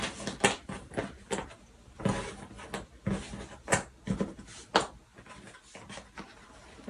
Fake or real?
real